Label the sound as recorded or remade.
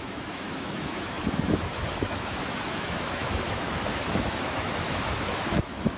remade